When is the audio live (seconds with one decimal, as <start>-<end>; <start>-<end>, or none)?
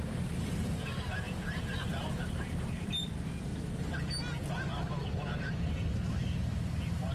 3.5-4.7